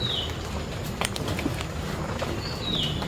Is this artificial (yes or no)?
no